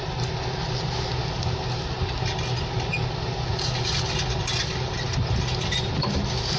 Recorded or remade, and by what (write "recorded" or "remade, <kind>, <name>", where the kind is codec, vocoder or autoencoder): recorded